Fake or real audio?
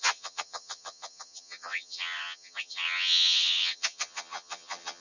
fake